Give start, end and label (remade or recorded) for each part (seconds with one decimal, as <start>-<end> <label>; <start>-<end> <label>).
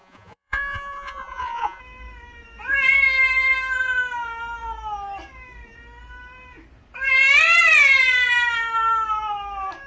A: 0.0-1.8 remade; 1.8-9.9 recorded